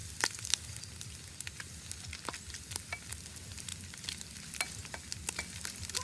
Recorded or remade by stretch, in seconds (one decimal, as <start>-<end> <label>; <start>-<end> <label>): 0.0-6.0 recorded